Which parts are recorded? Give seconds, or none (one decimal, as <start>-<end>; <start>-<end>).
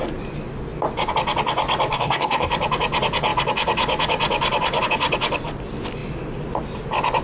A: 0.0-1.9; 2.5-7.2